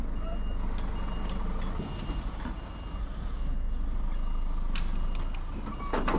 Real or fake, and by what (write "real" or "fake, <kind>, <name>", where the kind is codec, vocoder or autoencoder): real